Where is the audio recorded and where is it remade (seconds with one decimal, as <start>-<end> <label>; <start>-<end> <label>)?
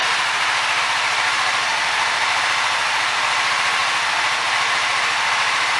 0.0-1.7 recorded; 1.7-2.4 remade; 2.4-5.8 recorded